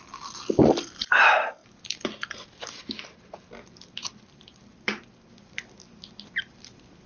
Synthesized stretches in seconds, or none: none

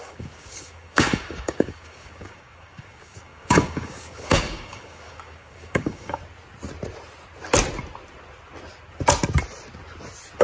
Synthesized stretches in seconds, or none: 0.0-6.2 (codec, DAC)

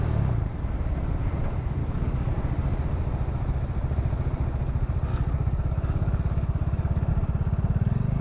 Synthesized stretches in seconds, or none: 1.8-2.3 (codec, DAC); 5.1-7.1

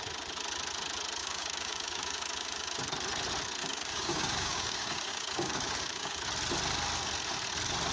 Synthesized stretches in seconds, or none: 1.2-2.8 (codec, DAC); 3.6-6.2

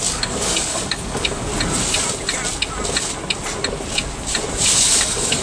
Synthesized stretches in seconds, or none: 0.0-1.5 (codec, DAC); 4.7-5.4

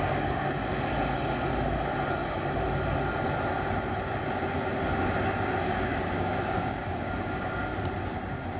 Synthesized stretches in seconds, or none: 0.0-0.6 (codec, DAC); 5.6-7.7

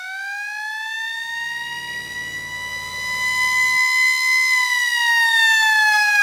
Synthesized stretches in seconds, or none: 5.1-6.2 (codec, DAC)